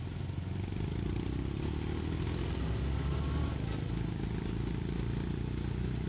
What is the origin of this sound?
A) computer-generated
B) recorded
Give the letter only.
B